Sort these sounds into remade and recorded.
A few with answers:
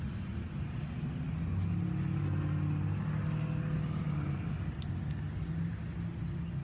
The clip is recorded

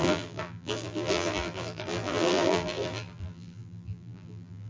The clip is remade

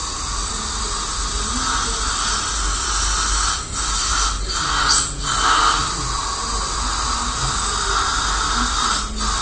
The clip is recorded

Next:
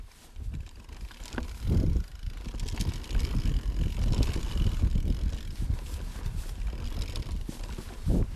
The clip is recorded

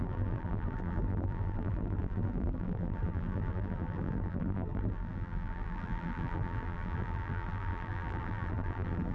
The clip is remade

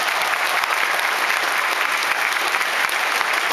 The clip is recorded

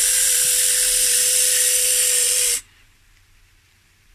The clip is remade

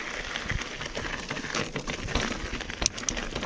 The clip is recorded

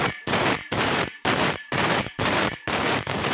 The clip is remade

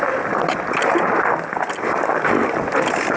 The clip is recorded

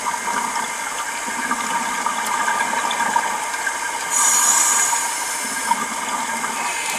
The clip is recorded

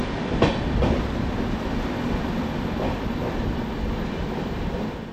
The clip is recorded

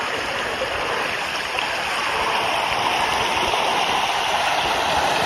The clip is recorded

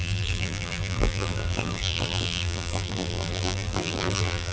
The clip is remade